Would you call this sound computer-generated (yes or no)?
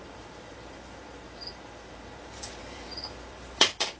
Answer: yes